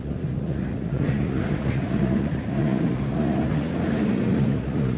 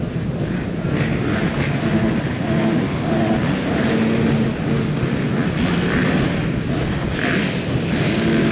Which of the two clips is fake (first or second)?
first